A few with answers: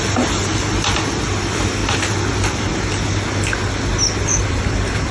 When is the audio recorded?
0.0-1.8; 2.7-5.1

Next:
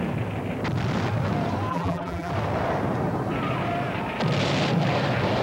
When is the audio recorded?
0.0-1.7; 2.3-5.4

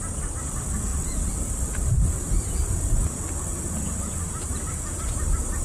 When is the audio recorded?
0.0-0.9; 3.1-4.5

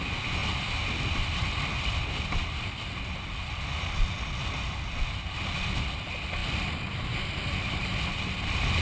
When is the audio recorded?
0.0-8.8

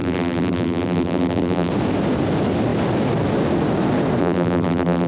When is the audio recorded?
1.7-4.2

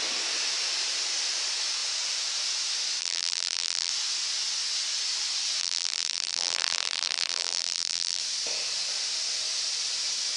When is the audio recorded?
0.0-3.0; 3.9-5.6; 8.2-10.4